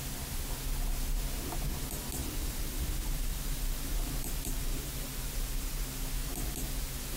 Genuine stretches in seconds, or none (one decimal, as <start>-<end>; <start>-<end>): 0.0-2.2; 5.7-7.2